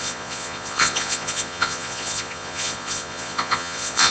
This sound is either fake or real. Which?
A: fake